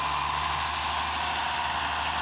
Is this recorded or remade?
recorded